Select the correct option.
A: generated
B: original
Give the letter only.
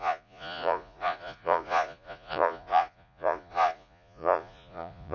A